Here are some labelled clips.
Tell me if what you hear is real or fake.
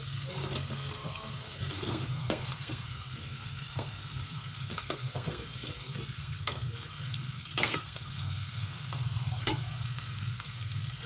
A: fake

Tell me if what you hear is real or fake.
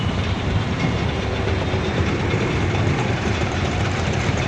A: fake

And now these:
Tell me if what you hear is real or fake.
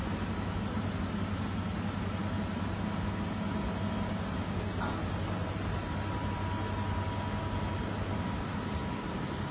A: real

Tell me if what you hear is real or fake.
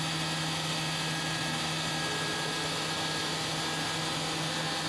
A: real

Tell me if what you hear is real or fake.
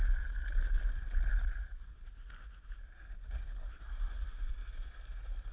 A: real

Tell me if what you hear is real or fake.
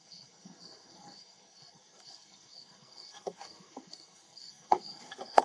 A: fake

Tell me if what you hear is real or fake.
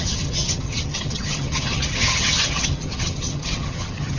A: fake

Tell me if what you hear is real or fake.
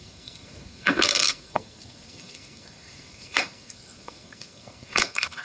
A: fake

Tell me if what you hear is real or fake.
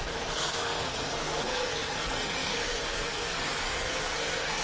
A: fake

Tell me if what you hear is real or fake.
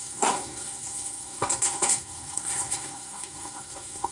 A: fake